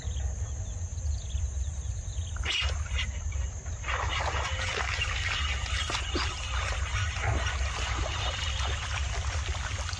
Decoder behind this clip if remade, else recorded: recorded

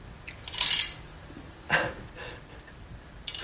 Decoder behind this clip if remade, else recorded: recorded